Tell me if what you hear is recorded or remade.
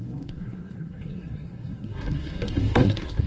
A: remade